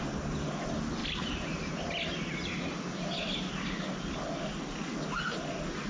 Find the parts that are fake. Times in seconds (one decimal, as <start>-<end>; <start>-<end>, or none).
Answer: none